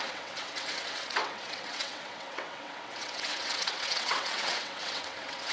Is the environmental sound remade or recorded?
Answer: remade